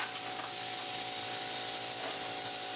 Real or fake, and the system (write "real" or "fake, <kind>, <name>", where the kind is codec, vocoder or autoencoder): real